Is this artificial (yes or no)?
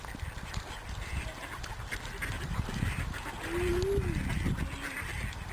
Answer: no